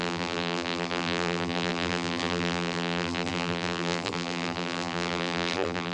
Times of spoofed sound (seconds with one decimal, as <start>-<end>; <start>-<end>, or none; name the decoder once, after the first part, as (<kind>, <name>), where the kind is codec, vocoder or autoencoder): 0.0-5.9 (vocoder, BigVGAN v2)